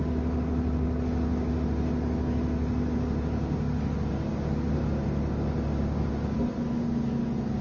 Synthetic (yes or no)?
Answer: no